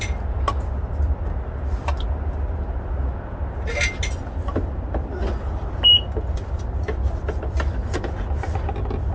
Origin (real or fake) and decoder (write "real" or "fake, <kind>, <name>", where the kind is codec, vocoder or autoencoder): real